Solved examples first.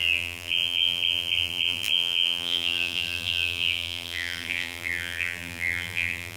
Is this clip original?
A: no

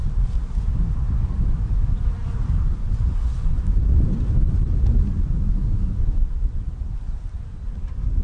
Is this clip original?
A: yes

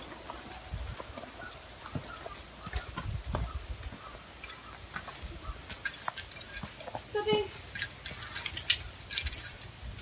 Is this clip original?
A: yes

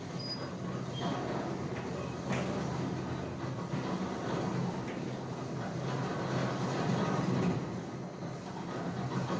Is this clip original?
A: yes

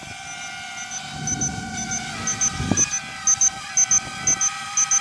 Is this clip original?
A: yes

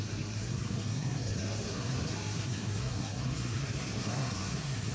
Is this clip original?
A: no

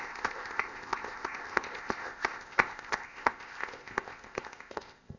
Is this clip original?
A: no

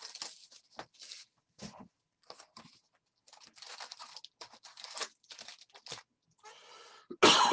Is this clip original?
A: yes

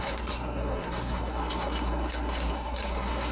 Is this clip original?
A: no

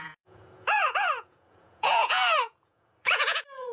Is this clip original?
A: no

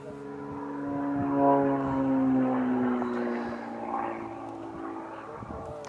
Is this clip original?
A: yes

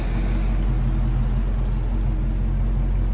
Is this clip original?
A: yes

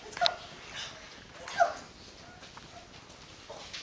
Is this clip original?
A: yes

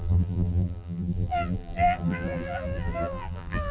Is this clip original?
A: no